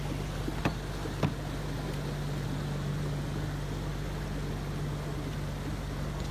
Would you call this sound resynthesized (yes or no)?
no